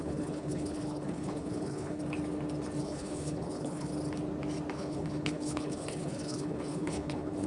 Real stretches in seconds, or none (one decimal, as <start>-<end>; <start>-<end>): 2.0-2.8; 3.9-4.7